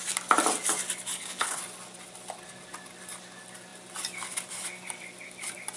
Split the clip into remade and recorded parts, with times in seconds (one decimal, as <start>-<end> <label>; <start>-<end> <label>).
0.0-1.1 recorded; 1.1-1.6 remade; 1.6-5.8 recorded